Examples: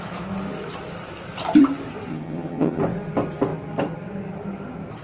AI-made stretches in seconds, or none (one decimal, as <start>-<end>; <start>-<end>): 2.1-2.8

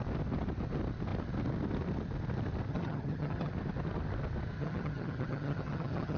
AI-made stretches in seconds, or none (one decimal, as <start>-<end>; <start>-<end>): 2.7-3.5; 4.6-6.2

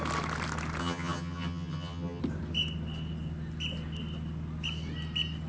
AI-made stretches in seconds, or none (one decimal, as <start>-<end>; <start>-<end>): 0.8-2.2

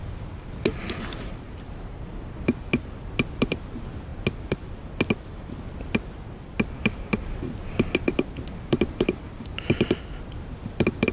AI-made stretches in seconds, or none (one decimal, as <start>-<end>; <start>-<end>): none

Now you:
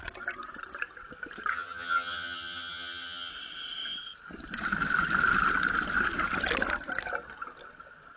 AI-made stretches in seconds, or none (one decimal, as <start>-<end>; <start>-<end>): 1.5-3.3

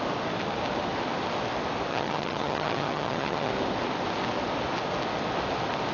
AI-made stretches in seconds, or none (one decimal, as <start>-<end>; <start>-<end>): 1.9-3.5

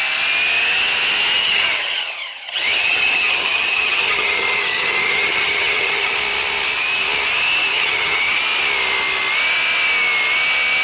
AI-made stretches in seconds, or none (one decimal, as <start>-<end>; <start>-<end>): 1.4-6.2; 7.7-8.4

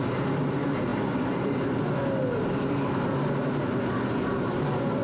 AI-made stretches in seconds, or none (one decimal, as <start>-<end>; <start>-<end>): none